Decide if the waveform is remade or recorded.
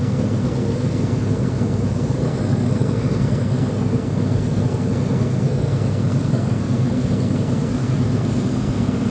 remade